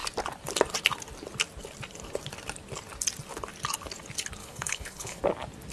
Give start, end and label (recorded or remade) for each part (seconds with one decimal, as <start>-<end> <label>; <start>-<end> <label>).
0.0-4.4 recorded; 4.4-5.2 remade; 5.2-5.7 recorded